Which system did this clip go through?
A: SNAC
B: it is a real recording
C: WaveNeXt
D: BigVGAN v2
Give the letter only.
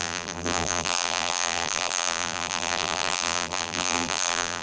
D